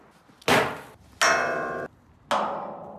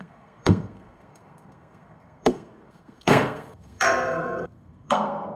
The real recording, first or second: first